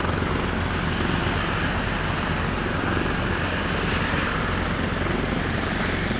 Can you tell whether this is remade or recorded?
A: recorded